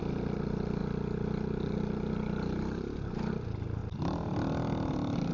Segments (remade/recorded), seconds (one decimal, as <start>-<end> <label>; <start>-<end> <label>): 0.0-5.3 recorded